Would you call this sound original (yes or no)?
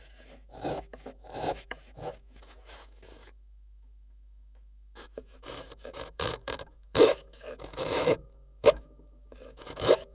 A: no